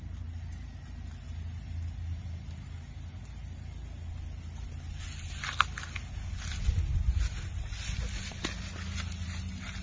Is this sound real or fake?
real